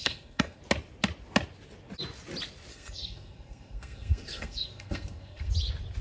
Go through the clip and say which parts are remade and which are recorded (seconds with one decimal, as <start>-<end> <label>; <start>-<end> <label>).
0.0-0.6 remade; 0.6-2.7 recorded; 2.7-5.5 remade; 5.5-6.0 recorded